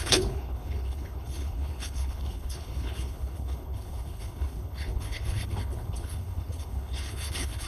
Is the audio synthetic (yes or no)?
yes